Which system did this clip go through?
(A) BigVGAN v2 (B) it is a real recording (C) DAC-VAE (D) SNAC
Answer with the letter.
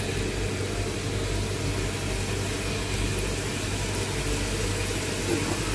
B